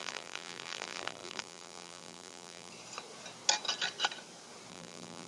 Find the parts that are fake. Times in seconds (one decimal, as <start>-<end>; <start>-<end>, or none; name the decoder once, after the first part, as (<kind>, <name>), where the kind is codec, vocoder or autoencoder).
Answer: 0.0-2.7 (vocoder, BigVGAN v2); 4.7-5.3